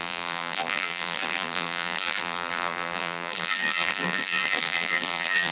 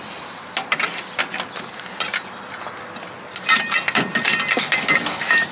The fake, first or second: first